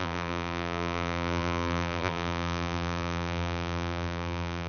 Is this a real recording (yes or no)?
no